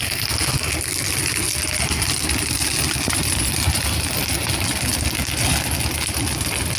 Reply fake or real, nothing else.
real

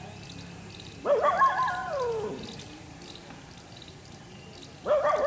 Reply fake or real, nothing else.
real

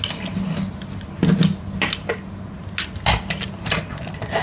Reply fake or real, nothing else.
real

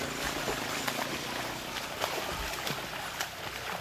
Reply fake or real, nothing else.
real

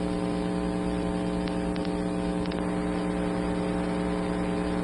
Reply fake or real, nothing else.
real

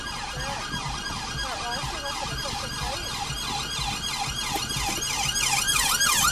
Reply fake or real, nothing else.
real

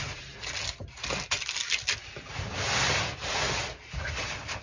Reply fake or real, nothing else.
real